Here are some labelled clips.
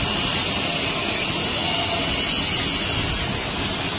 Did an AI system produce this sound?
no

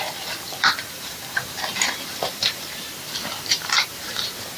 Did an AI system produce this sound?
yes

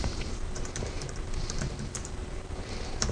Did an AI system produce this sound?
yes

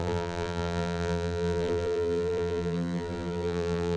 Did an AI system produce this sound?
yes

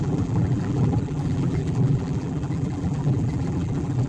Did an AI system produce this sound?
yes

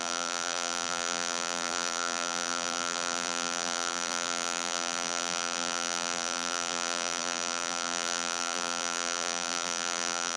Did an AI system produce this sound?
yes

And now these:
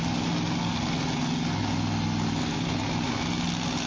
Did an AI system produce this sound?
no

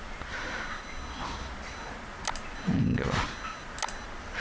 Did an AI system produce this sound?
no